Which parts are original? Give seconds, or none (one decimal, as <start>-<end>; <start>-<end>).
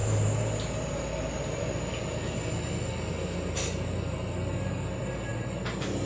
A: 0.0-6.1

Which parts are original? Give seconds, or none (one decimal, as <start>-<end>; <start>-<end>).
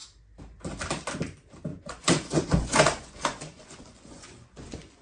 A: 0.0-1.7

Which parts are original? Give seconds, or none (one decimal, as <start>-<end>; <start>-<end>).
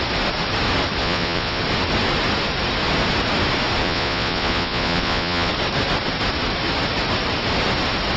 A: 0.0-1.0; 1.6-3.8; 5.5-8.2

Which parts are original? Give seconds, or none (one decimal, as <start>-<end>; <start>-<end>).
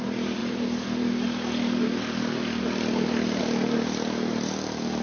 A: 0.0-5.0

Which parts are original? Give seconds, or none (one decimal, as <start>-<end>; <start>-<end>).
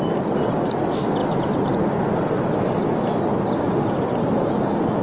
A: 0.0-5.0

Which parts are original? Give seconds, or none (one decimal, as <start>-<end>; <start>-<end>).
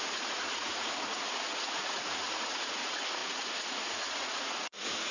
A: none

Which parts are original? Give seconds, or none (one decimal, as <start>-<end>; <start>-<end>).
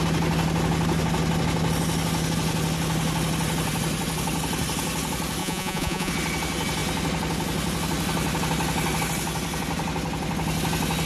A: 0.0-5.4; 6.1-11.1